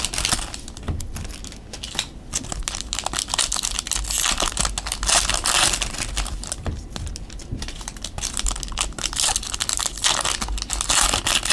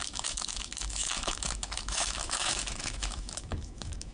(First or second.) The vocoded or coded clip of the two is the second